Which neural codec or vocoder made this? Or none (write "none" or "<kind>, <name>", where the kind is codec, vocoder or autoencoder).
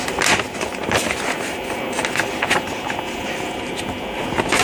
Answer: none